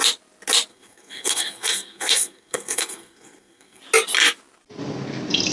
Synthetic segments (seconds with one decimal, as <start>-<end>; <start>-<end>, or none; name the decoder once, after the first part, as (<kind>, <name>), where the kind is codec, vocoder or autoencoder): 0.7-3.8 (codec, SNAC)

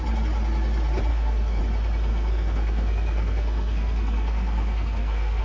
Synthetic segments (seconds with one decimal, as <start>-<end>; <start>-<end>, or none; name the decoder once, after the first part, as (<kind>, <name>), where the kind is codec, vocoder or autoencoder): 1.1-1.6 (codec, SNAC); 2.1-5.4